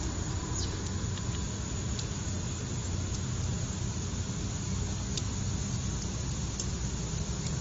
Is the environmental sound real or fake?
real